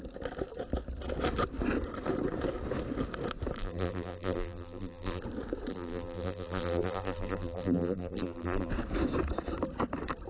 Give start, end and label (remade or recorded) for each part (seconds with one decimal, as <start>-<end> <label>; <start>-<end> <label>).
0.0-3.6 recorded; 3.6-5.2 remade; 5.2-5.7 recorded; 5.7-8.7 remade; 8.7-10.3 recorded